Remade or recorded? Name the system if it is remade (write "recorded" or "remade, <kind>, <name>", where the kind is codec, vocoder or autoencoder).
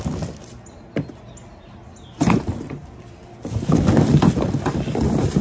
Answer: recorded